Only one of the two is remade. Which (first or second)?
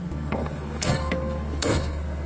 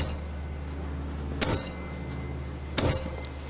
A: first